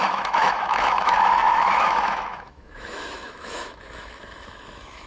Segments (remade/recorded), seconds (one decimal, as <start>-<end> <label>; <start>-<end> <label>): 0.0-5.1 remade